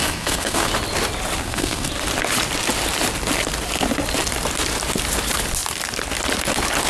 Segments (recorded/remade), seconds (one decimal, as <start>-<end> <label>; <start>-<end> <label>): 0.0-0.7 remade; 0.7-1.4 recorded; 1.4-1.9 remade; 1.9-6.9 recorded